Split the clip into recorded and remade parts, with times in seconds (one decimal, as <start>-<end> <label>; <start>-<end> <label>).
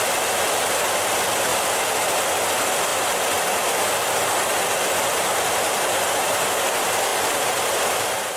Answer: 0.0-7.1 recorded; 7.1-8.4 remade